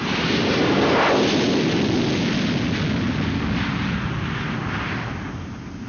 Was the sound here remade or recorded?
recorded